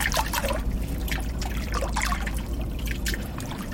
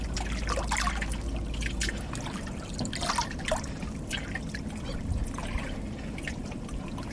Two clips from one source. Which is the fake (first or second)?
first